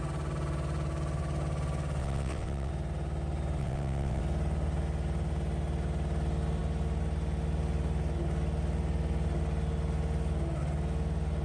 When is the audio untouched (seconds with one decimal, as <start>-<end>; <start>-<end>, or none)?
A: 0.0-2.0; 2.7-3.6; 4.2-11.4